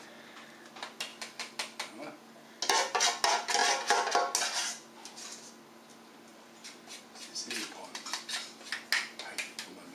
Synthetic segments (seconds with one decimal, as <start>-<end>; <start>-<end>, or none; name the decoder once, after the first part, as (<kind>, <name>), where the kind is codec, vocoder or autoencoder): 6.3-8.1 (vocoder, BigVGAN v2)